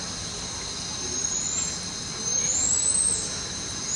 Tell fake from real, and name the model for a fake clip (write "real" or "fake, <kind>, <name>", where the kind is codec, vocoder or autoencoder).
real